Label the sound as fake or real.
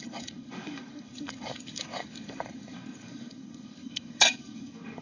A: fake